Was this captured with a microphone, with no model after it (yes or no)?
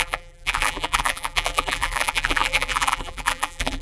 no